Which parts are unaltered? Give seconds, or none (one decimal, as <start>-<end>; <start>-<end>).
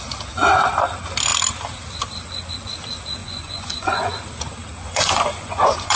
0.0-3.2; 4.1-4.8